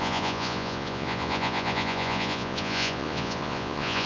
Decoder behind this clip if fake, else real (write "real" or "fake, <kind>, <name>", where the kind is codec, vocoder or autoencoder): fake, vocoder, Vocos